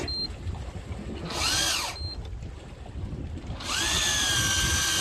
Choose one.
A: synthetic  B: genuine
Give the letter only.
B